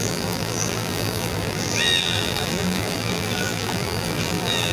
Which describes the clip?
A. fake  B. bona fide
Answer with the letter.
A